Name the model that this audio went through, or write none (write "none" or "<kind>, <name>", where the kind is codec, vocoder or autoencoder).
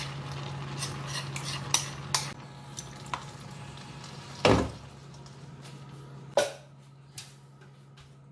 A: none